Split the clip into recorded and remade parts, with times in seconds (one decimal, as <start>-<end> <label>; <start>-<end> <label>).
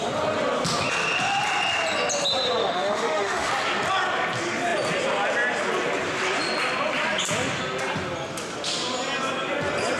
0.0-2.6 recorded; 2.6-3.5 remade; 3.5-10.0 recorded